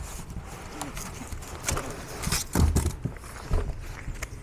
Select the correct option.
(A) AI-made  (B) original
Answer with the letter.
B